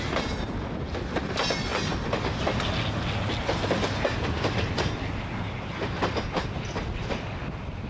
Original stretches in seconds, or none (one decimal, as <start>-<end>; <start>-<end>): 0.0-7.9